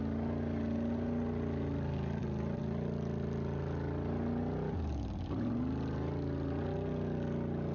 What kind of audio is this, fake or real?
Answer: real